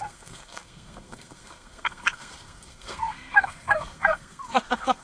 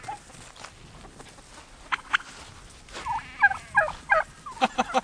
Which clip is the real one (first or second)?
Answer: second